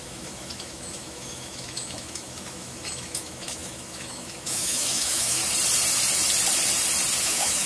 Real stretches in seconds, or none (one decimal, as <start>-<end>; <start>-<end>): 5.4-7.2